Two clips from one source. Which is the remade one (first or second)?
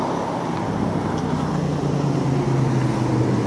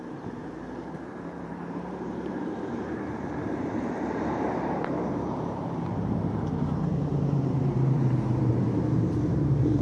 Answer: second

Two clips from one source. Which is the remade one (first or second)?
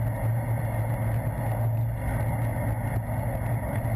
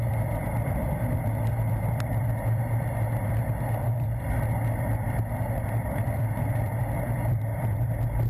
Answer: second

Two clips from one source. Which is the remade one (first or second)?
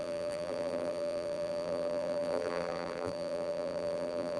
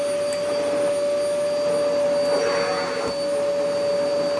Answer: first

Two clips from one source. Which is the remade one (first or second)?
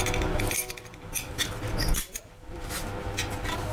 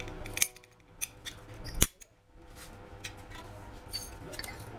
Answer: first